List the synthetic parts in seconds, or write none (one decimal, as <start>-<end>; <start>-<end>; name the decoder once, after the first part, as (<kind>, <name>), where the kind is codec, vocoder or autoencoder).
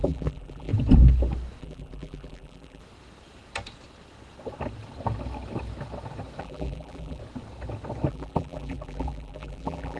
0.0-0.7 (vocoder, BigVGAN v2); 1.6-2.8; 6.4-7.2; 8.1-10.0